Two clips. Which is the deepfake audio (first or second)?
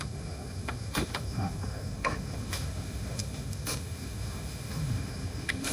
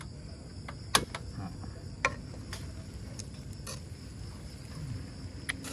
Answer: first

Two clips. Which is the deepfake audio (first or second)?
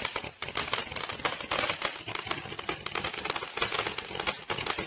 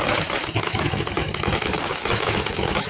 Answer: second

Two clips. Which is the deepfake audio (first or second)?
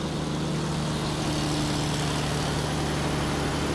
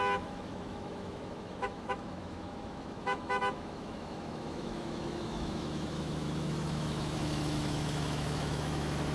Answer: second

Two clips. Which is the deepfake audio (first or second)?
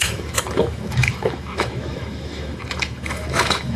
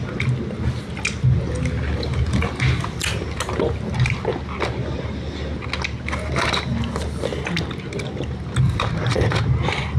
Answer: first